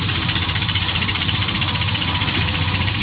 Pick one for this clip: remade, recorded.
remade